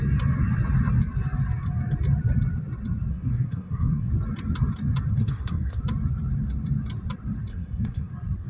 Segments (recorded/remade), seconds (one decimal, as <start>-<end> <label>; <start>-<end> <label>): 0.0-3.1 recorded; 3.1-4.1 remade; 4.1-5.2 recorded; 5.2-5.8 remade; 5.8-7.5 recorded; 7.5-8.1 remade; 8.1-8.5 recorded